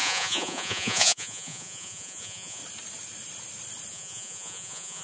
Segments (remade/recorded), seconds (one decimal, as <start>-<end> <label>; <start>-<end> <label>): 0.0-2.6 remade; 2.6-3.9 recorded; 3.9-5.0 remade